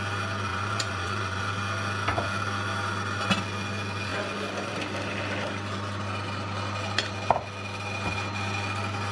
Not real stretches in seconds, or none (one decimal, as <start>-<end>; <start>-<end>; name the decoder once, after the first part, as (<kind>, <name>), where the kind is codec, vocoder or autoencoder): 0.5-1.4 (vocoder, Vocos)